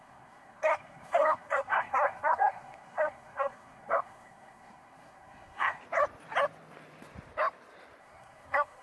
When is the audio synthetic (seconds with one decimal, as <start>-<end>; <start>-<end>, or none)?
0.0-5.8; 8.0-8.8